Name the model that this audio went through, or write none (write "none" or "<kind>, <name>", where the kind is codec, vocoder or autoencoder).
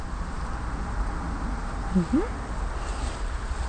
none